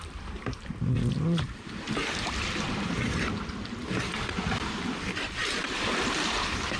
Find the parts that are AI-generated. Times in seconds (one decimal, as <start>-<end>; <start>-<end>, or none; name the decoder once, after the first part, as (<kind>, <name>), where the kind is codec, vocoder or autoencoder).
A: 0.0-3.3 (vocoder, BigVGAN v2); 5.4-6.8